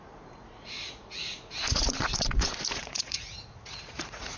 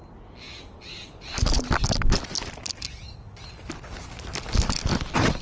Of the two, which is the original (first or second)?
second